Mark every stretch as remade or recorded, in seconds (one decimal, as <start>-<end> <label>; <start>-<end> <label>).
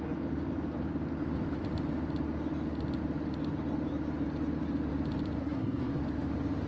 0.0-5.4 recorded; 5.4-6.0 remade; 6.0-6.7 recorded